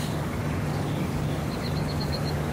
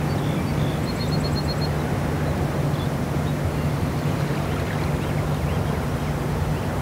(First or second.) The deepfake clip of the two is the first